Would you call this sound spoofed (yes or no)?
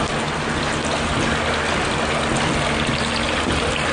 no